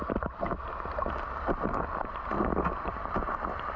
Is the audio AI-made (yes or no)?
no